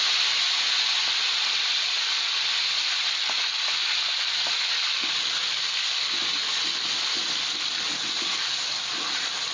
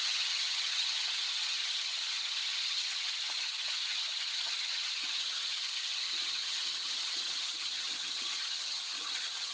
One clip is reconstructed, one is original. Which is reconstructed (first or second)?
second